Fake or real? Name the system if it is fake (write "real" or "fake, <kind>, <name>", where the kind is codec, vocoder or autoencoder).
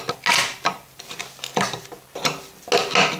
real